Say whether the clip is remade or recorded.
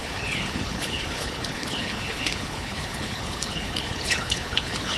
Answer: remade